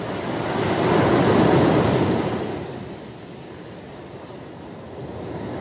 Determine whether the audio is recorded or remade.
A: recorded